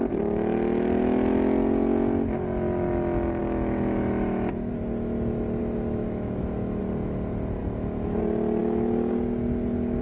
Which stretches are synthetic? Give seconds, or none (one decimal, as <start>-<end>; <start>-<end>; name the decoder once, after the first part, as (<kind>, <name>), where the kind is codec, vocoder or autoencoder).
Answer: 3.4-4.7 (autoencoder, DAC-VAE); 5.6-6.8; 7.6-8.2; 8.6-9.1